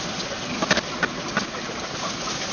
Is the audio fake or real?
real